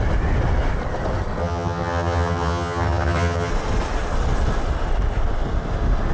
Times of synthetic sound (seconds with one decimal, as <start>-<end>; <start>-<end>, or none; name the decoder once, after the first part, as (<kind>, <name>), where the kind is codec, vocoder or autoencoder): 1.4-3.5 (vocoder, HiFi-GAN)